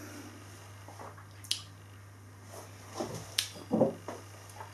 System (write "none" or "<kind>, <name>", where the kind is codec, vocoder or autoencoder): none